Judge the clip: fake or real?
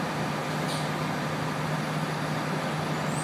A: real